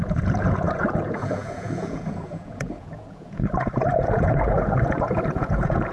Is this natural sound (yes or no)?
no